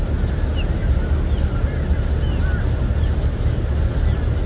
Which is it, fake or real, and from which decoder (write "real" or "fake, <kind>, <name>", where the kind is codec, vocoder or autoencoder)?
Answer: real